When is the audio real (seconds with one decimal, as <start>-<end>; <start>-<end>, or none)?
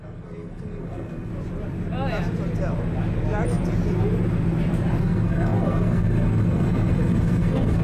1.3-5.0